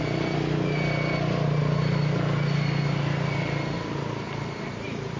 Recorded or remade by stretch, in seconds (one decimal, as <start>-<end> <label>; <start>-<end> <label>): 0.0-5.2 recorded